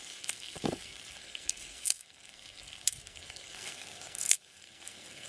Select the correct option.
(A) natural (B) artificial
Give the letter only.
B